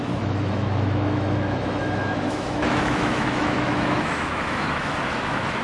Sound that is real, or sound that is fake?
fake